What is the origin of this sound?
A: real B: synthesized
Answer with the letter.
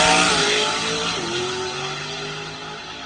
A